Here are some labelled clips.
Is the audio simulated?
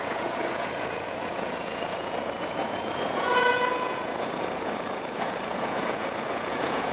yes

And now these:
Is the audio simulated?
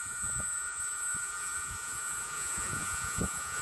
yes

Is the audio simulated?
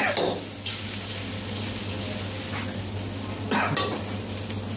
no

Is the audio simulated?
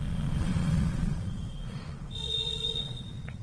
yes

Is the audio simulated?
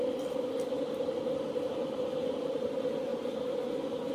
no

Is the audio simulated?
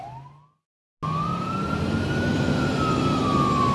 no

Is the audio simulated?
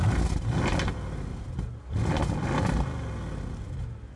no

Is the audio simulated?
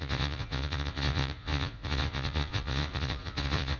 yes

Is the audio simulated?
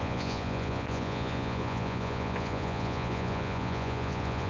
yes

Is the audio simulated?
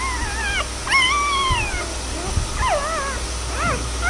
no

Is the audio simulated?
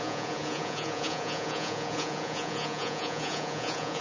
yes